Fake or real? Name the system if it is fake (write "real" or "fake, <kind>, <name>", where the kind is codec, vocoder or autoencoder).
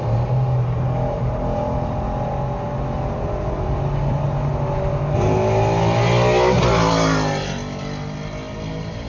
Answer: real